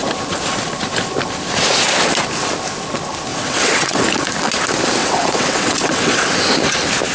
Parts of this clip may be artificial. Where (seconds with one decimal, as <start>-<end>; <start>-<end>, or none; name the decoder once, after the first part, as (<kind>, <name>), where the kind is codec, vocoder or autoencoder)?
3.3-4.0 (vocoder, WaveNeXt); 5.0-6.2